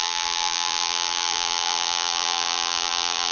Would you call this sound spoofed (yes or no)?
yes